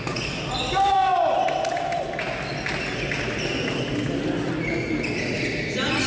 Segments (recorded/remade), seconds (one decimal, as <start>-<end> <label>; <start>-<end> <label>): 0.0-6.1 recorded